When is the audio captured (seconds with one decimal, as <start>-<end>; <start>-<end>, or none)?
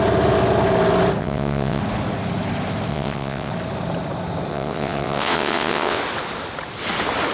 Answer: 0.0-1.2; 1.8-2.9; 3.5-4.5; 6.0-7.3